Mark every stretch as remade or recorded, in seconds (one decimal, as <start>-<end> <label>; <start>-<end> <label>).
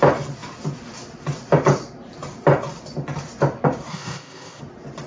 0.0-3.9 recorded; 3.9-4.6 remade; 4.6-5.1 recorded